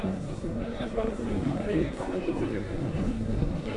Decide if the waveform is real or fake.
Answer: fake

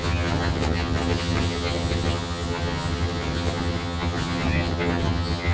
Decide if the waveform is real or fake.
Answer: fake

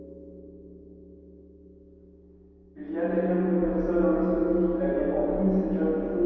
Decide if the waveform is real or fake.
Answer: real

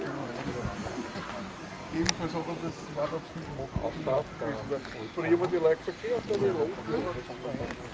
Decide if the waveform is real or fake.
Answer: real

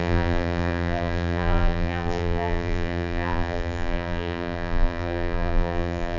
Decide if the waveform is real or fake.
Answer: fake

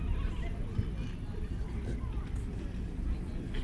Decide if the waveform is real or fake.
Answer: real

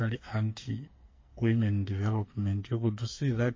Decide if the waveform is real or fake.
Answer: fake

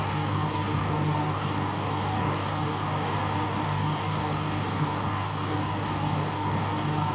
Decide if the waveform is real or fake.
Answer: fake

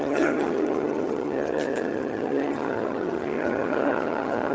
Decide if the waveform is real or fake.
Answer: fake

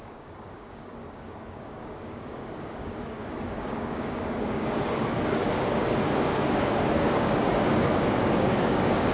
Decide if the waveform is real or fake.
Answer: fake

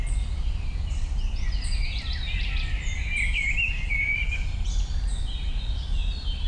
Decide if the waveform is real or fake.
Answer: real